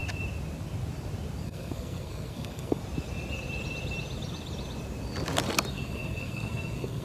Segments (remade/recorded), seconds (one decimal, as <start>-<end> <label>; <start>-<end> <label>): 0.0-1.4 recorded; 1.4-2.8 remade; 2.8-5.7 recorded; 5.7-7.0 remade